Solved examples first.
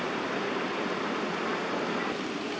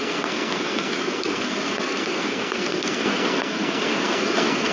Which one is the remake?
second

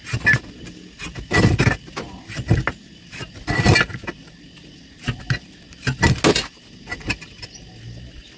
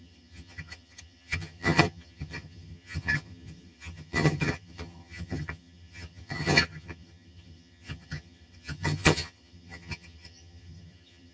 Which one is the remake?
second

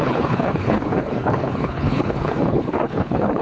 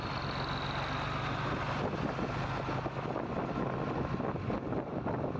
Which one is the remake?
first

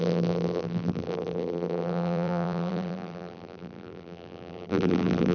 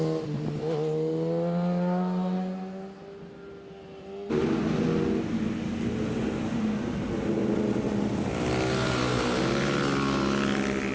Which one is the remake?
first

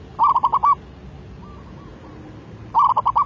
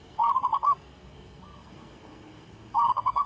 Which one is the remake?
second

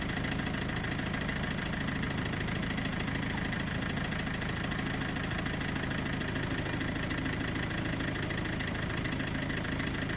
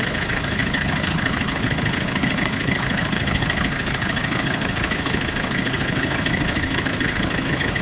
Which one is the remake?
second